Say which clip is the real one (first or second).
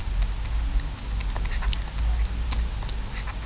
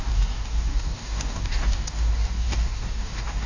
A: first